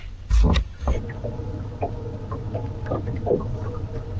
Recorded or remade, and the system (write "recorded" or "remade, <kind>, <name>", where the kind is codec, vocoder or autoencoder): recorded